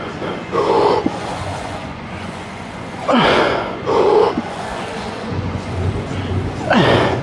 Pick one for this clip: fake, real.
fake